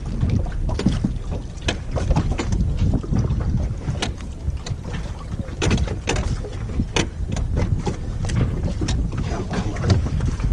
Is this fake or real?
real